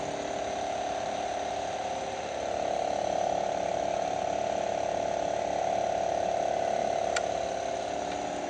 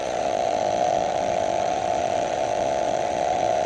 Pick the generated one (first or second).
second